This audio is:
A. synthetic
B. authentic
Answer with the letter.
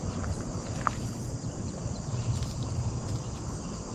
A